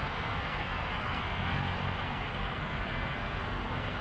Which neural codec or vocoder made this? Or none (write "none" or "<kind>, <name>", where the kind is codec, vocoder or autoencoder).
codec, SNAC